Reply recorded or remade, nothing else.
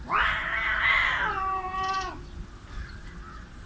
recorded